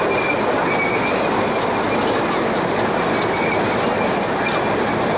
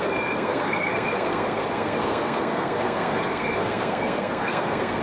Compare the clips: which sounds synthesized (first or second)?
second